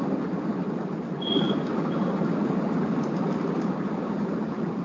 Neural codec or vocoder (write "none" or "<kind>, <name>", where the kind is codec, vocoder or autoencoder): none